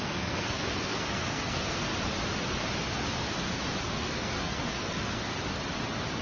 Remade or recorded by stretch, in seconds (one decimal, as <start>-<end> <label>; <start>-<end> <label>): 0.0-1.9 remade; 1.9-3.8 recorded; 3.8-5.3 remade; 5.3-6.2 recorded